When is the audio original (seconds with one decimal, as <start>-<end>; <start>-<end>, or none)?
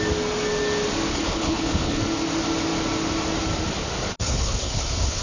0.0-1.1; 2.0-4.2